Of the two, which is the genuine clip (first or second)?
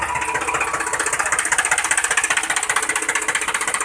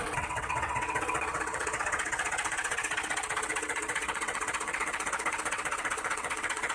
first